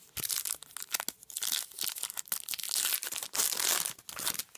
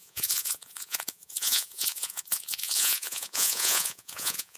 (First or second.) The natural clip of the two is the first